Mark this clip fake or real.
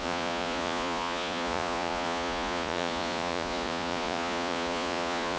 fake